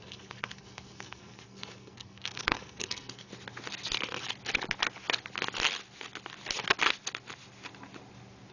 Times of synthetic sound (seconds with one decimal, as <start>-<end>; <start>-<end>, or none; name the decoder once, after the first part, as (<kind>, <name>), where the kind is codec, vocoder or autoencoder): 0.0-3.3 (codec, SNAC)